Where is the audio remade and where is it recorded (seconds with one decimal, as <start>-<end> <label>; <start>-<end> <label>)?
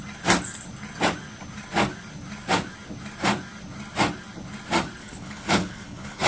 0.0-5.0 recorded; 5.0-6.3 remade